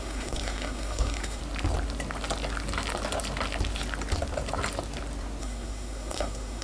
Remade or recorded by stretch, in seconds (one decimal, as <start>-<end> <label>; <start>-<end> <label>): 0.0-1.4 remade; 1.4-5.4 recorded; 5.4-6.6 remade